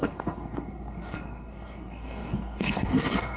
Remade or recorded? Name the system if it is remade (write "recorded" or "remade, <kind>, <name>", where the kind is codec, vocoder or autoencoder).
remade, codec, SNAC